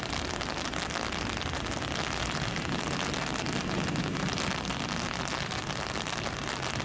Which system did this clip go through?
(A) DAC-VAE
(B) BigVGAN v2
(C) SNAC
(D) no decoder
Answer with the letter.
D